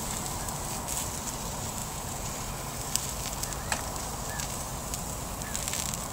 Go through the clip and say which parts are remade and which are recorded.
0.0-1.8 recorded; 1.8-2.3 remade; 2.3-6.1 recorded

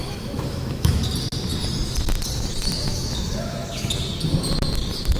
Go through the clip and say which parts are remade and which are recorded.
0.0-1.0 remade; 1.0-2.8 recorded; 2.8-3.9 remade; 3.9-5.2 recorded

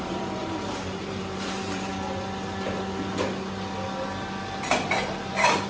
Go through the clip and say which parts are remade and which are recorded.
0.0-1.9 remade; 1.9-4.9 recorded; 4.9-5.7 remade

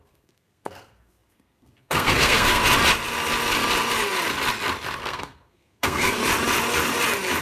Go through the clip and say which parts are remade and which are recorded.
0.0-2.6 remade; 2.6-5.0 recorded; 5.0-6.2 remade; 6.2-7.4 recorded